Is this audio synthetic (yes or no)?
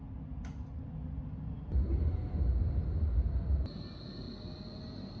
no